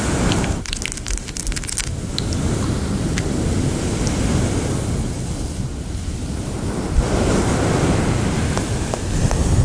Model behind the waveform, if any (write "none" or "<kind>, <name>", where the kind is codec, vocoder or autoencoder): none